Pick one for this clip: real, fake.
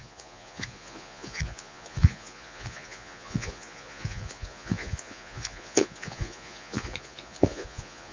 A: fake